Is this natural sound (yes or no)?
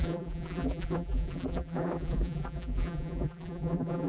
no